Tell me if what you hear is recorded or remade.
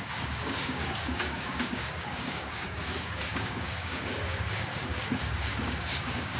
remade